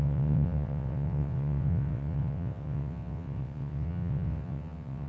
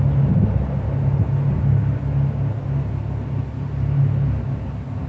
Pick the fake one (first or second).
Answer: first